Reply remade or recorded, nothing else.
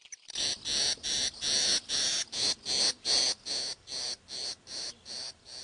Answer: recorded